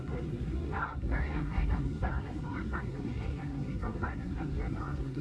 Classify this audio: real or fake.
fake